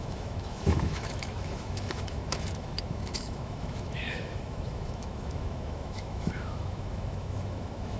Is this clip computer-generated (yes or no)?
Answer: yes